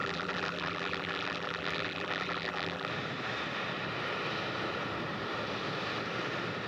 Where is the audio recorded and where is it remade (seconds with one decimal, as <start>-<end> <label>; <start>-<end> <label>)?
0.0-2.9 remade; 2.9-6.7 recorded